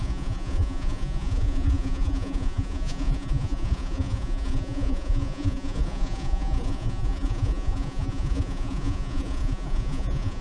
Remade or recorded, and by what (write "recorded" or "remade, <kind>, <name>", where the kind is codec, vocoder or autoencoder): remade, vocoder, Vocos